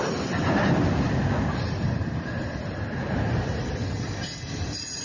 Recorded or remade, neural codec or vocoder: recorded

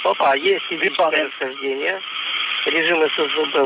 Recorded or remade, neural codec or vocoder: recorded